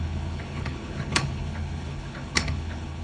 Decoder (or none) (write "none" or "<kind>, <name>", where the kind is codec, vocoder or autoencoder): codec, HILCodec